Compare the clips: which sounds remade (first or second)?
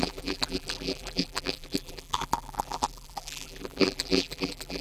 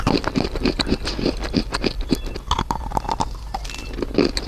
first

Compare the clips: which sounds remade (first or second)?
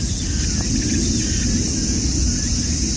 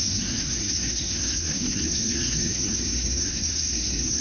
second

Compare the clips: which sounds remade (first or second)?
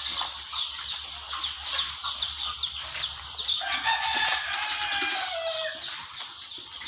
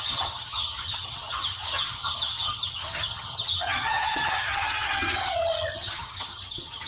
second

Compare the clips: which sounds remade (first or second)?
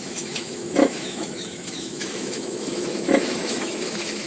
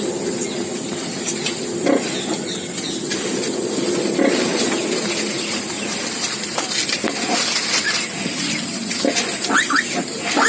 first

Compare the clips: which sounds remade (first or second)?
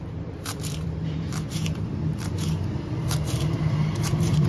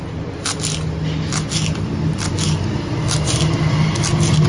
first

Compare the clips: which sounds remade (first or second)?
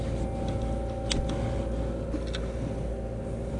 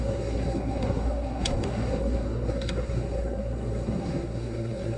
second